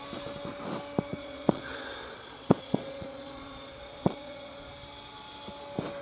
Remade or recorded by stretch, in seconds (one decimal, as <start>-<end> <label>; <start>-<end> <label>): 0.0-1.1 recorded; 1.1-4.7 remade; 4.7-6.0 recorded

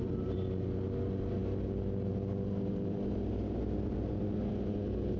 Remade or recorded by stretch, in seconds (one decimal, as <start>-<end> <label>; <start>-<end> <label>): 0.0-5.2 recorded

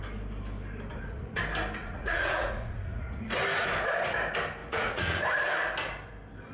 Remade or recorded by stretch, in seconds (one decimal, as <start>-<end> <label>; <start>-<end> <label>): 0.0-0.9 recorded; 0.9-1.4 remade; 1.4-1.8 recorded; 1.8-3.4 remade; 3.4-4.6 recorded; 4.6-5.2 remade; 5.2-6.5 recorded

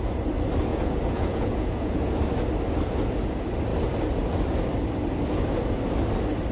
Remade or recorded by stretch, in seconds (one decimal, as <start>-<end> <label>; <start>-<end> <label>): 0.0-0.7 recorded; 0.7-2.3 remade; 2.3-6.5 recorded

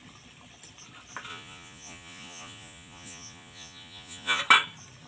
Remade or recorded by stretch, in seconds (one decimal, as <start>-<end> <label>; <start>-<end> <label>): 0.0-1.3 recorded; 1.3-4.4 remade; 4.4-5.1 recorded

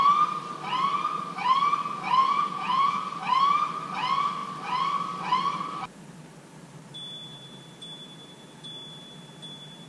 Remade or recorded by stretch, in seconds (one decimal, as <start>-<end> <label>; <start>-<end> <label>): 0.0-2.2 recorded; 2.2-3.0 remade; 3.0-9.9 recorded